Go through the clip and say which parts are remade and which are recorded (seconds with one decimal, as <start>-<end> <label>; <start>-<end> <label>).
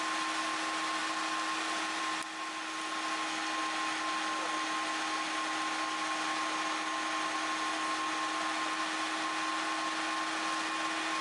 0.0-11.2 recorded